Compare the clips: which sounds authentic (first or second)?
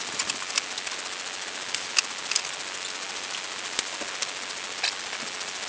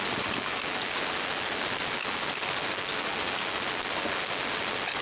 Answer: first